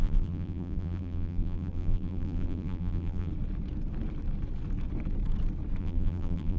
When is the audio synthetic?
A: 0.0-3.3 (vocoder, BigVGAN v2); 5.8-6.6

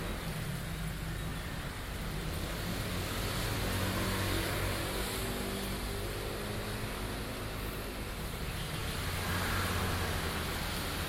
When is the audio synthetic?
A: none

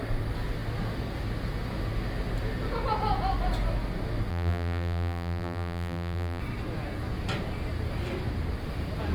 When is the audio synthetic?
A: 4.3-6.4 (vocoder, BigVGAN v2)

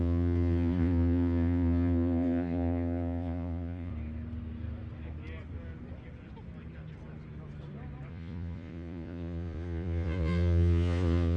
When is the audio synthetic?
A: 0.0-3.9 (vocoder, Vocos); 8.1-11.4

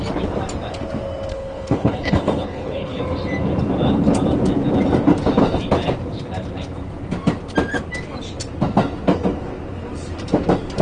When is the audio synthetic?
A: 1.3-3.0 (codec, HILCodec)